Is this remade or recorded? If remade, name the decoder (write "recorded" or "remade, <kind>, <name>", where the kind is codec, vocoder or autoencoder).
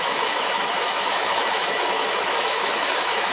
remade, autoencoder, DAC-VAE